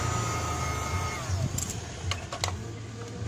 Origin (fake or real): real